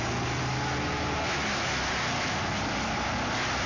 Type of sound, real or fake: real